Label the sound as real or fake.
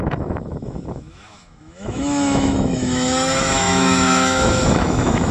fake